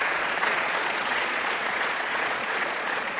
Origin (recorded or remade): remade